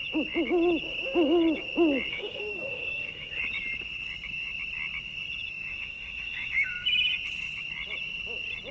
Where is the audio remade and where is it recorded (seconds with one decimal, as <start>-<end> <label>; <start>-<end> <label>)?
0.0-2.1 recorded; 2.1-3.4 remade; 3.4-5.7 recorded; 5.7-6.7 remade; 6.7-8.7 recorded

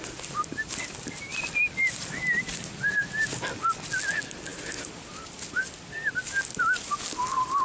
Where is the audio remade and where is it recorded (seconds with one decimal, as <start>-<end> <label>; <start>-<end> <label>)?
0.0-7.6 recorded

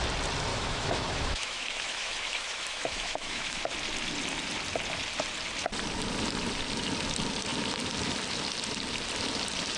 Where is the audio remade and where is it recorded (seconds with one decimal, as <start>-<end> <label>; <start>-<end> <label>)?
0.0-0.5 recorded; 0.5-3.6 remade; 3.6-9.8 recorded

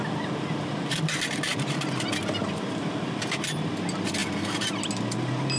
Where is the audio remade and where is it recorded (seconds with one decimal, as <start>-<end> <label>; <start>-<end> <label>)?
0.0-5.6 recorded

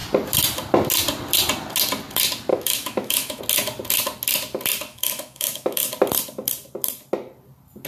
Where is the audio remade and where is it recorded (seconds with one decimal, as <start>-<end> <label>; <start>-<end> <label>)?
0.0-2.5 recorded; 2.5-3.4 remade; 3.4-4.9 recorded; 4.9-5.9 remade; 5.9-7.9 recorded

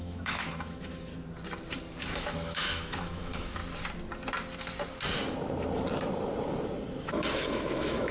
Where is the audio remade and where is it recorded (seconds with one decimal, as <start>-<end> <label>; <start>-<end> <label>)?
0.0-1.1 remade; 1.1-2.0 recorded; 2.0-3.6 remade; 3.6-7.0 recorded; 7.0-8.1 remade